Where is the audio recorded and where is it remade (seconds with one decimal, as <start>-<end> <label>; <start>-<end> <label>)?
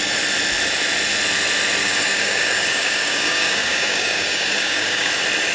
0.0-1.8 recorded; 1.8-5.1 remade; 5.1-5.5 recorded